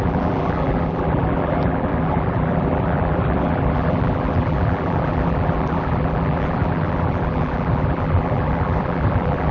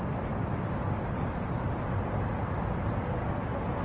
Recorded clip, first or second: second